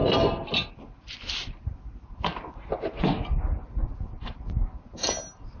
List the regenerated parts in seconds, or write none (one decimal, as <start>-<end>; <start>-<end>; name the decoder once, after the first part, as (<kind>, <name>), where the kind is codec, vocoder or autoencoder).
none